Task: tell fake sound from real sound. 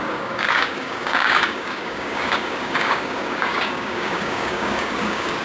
fake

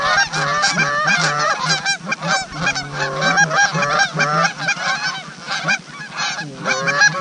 real